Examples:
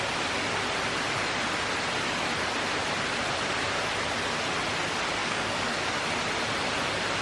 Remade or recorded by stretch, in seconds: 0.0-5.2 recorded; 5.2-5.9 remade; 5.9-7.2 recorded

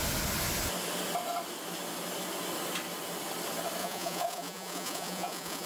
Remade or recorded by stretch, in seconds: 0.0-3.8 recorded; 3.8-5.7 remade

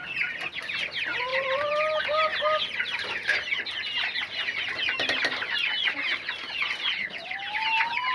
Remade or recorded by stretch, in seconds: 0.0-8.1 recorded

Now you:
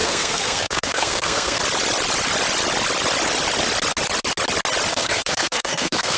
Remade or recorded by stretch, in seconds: 0.0-1.6 remade; 1.6-4.9 recorded; 4.9-6.2 remade

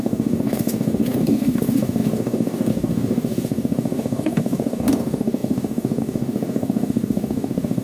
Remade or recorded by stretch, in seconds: 0.0-7.8 remade